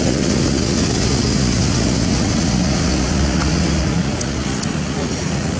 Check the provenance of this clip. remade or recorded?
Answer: remade